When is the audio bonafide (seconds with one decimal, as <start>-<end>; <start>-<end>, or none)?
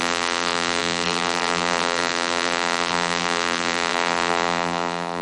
none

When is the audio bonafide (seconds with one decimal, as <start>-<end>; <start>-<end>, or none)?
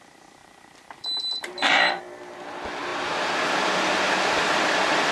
0.0-0.4; 2.0-5.1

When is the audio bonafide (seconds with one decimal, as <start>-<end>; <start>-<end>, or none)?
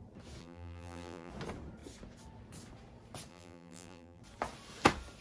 0.0-0.4; 1.3-3.3; 4.2-5.2